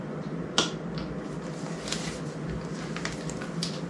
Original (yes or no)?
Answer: yes